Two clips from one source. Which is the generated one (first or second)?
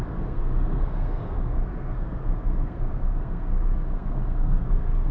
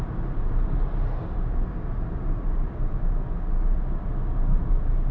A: first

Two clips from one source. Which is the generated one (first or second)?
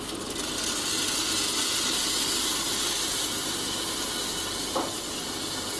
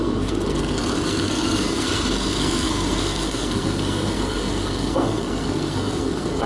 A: second